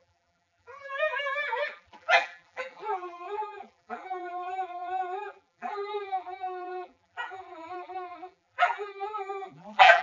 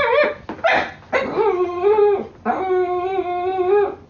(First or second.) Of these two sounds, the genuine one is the second